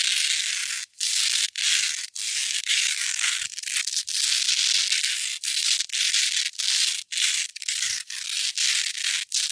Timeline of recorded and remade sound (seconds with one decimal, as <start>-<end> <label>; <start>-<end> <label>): 0.0-2.3 recorded; 2.3-3.4 remade; 3.4-7.5 recorded; 7.5-8.2 remade; 8.2-9.5 recorded